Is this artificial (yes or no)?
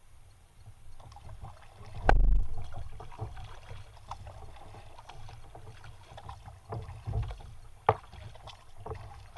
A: no